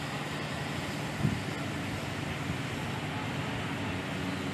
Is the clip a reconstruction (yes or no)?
no